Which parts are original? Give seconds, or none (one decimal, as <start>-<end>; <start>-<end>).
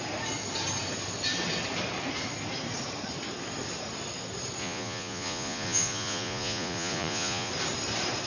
0.0-4.6; 7.5-8.3